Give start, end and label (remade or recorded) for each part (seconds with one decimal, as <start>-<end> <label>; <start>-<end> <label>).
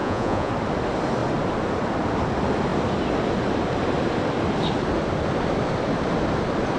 0.0-0.5 remade; 0.5-6.8 recorded